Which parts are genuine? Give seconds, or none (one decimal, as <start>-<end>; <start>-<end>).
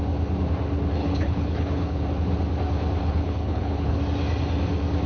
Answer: 0.0-1.0; 2.0-3.0; 4.0-5.1